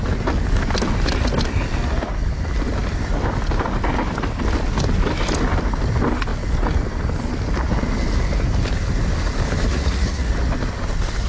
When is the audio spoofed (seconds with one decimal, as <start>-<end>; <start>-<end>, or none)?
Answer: 9.7-10.3